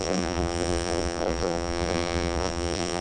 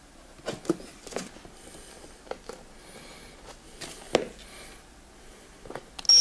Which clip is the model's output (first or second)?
first